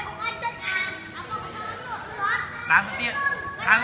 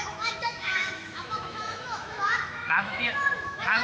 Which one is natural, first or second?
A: first